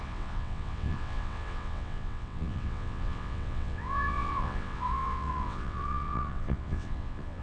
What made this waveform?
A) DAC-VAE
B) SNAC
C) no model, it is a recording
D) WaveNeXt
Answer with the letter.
D